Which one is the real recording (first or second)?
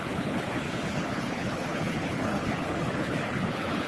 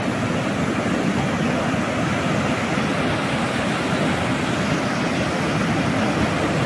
second